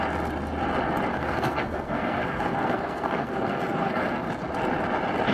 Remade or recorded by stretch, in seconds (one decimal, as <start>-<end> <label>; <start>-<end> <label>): 0.0-1.1 recorded; 1.1-4.3 remade; 4.3-5.3 recorded